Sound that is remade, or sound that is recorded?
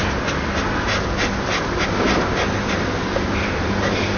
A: recorded